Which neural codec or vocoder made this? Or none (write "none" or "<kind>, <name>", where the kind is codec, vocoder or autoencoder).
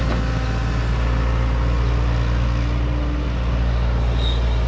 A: none